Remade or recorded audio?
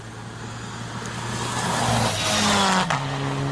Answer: recorded